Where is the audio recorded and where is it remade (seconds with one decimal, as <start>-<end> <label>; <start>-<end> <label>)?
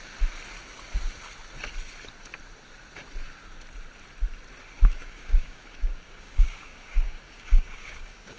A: 0.0-5.0 recorded; 5.0-8.4 remade